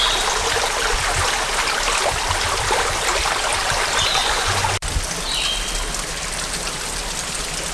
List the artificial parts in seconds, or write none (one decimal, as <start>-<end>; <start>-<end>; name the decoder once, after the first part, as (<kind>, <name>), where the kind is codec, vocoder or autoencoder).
4.2-4.7 (vocoder, Vocos)